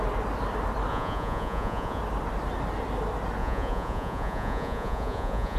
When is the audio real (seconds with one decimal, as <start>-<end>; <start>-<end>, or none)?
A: 0.0-0.9; 2.0-3.4